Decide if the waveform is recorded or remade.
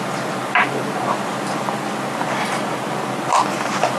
recorded